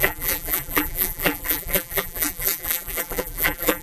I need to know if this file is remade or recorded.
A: remade